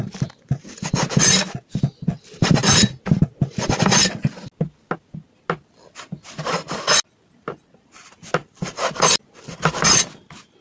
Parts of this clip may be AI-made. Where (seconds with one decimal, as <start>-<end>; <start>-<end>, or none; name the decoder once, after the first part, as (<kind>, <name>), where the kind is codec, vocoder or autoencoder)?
none